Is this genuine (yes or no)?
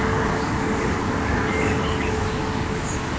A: no